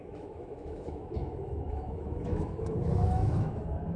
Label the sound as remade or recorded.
remade